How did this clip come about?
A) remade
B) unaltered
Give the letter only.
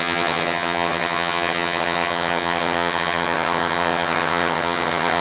A